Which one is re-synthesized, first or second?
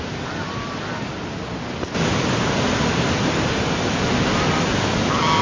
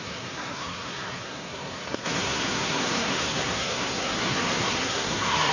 second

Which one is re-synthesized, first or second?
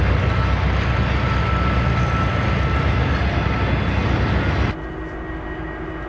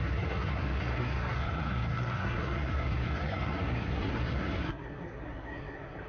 second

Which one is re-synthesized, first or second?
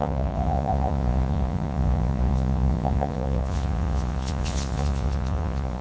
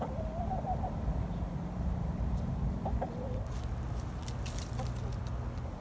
first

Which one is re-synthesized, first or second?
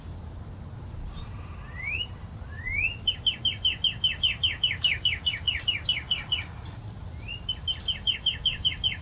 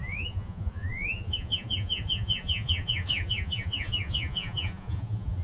second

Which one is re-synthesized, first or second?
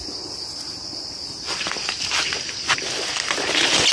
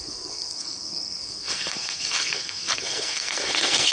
second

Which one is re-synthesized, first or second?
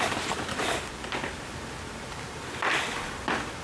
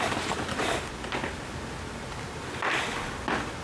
first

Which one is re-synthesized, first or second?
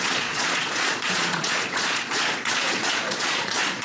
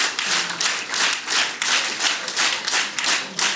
first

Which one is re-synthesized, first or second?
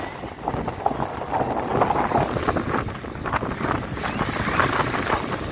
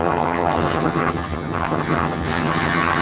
second